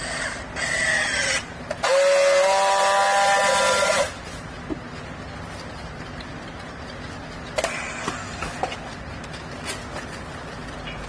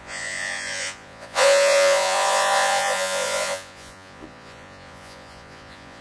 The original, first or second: first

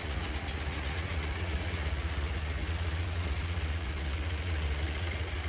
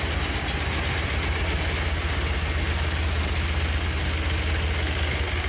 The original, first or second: second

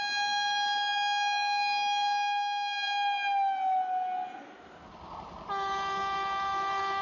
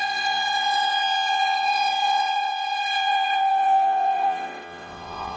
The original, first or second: first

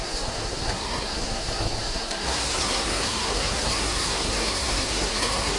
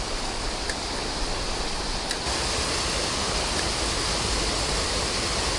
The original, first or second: second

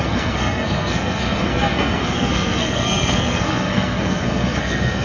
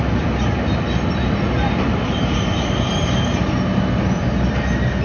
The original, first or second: second